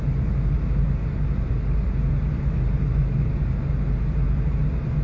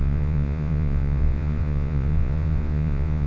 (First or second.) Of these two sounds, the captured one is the first